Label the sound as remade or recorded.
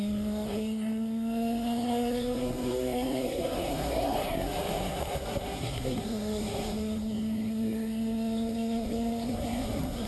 remade